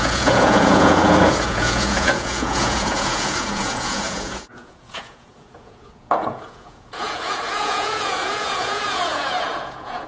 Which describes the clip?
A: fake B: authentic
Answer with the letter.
A